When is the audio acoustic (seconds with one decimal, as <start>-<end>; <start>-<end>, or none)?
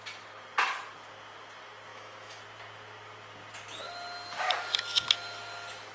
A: 0.0-1.9; 2.4-5.9